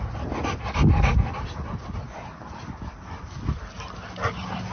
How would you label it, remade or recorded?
recorded